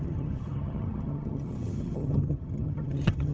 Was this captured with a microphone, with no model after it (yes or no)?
no